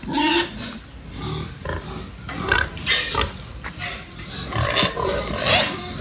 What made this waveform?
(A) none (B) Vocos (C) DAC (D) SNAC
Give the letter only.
A